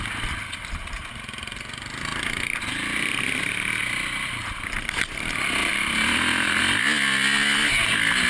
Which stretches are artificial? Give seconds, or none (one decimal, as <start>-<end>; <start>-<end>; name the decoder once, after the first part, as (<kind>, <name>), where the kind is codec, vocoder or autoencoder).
5.6-6.6 (vocoder, BigVGAN v2)